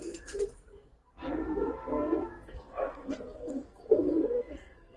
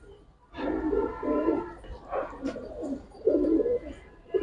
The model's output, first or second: first